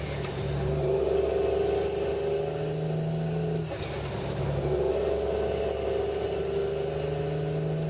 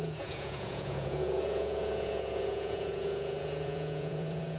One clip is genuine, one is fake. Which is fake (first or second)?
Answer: second